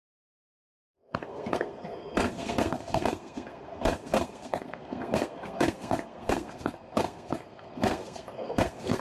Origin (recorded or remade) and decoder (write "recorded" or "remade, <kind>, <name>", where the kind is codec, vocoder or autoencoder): remade, codec, SNAC